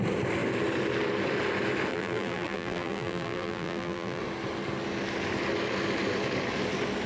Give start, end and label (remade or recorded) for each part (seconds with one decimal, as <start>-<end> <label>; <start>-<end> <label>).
0.0-1.9 recorded; 1.9-4.2 remade; 4.2-7.1 recorded